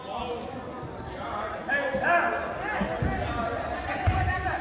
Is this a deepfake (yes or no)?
no